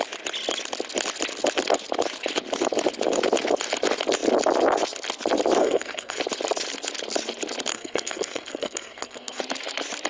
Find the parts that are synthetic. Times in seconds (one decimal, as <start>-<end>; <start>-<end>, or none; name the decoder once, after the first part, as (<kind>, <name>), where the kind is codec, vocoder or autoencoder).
5.6-6.2 (codec, SNAC); 7.7-9.4